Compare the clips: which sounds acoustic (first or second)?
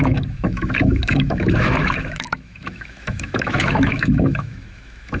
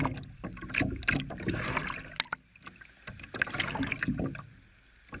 second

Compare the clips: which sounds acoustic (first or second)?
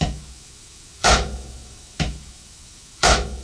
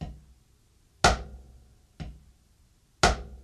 second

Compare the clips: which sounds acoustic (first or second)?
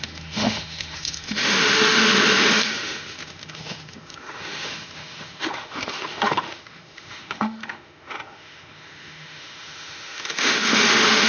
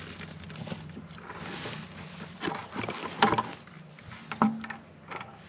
second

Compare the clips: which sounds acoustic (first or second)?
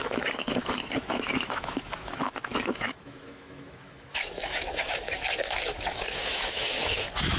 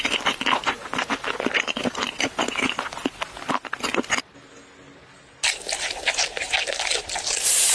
second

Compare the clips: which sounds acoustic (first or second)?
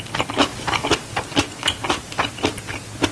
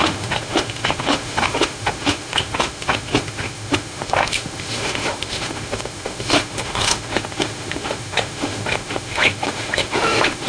first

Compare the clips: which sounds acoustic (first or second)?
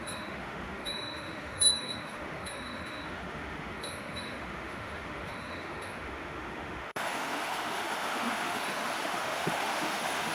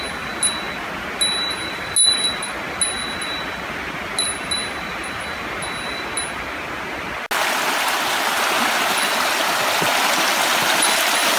second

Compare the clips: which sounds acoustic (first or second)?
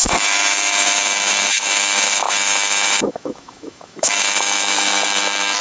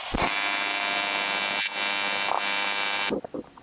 second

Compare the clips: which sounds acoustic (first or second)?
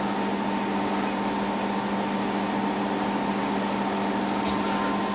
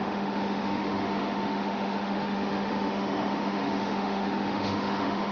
first